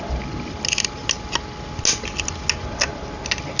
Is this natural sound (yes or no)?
yes